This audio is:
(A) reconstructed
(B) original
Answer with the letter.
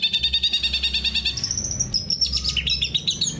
B